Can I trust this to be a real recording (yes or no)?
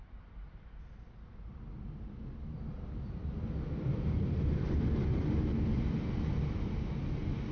yes